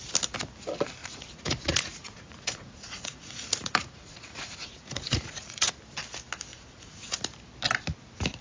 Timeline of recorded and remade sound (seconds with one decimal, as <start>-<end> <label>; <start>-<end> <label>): 0.0-1.0 recorded; 1.0-5.7 remade; 5.7-6.5 recorded; 6.5-7.2 remade; 7.2-8.4 recorded